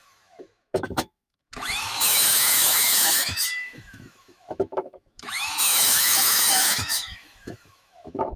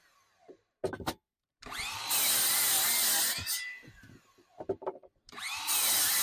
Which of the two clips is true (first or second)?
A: second